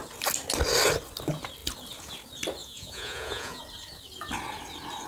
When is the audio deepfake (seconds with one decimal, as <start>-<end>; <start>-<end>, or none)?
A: 2.6-3.6